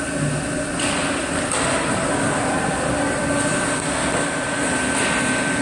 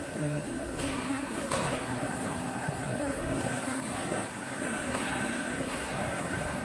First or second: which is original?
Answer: first